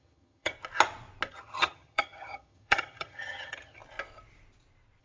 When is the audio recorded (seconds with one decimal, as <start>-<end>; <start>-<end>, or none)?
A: 0.5-1.3; 3.8-5.0

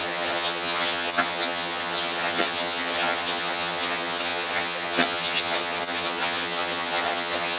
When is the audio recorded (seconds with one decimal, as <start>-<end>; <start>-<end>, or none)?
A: none